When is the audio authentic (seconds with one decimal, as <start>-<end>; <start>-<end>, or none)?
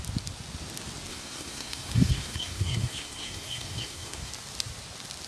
0.0-1.1; 4.3-5.3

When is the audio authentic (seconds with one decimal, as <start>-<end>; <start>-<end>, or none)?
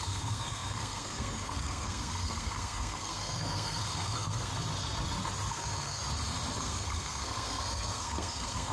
4.5-5.5; 6.0-6.6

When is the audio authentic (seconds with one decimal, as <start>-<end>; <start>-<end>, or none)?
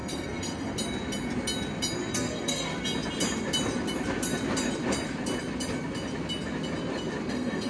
0.7-2.1; 2.7-7.3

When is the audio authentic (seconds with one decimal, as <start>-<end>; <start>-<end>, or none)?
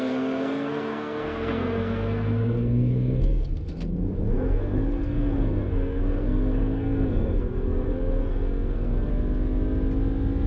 9.1-10.5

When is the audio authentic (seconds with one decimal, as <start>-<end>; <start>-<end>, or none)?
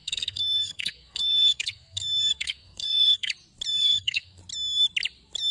3.3-3.7; 4.4-5.5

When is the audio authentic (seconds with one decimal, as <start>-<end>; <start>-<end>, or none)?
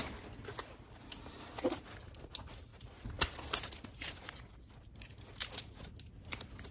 0.0-6.7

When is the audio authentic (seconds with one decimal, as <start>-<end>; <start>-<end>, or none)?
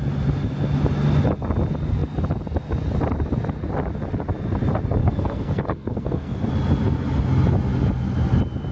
0.0-5.0; 6.5-8.7